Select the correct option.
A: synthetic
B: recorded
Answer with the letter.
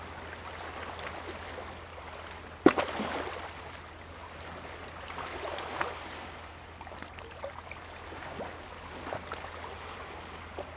B